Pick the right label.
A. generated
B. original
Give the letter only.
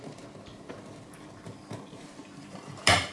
A